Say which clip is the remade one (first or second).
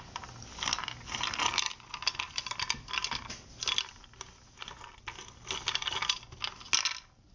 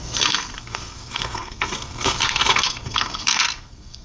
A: second